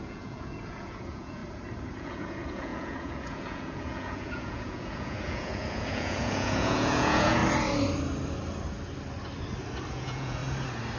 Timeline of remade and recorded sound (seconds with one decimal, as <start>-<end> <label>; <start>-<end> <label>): 0.0-1.4 remade; 1.4-2.0 recorded; 2.0-7.4 remade; 7.4-9.9 recorded; 9.9-10.4 remade; 10.4-11.0 recorded